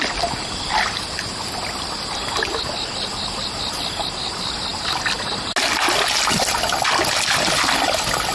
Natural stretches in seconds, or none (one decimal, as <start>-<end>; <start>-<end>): 0.0-8.3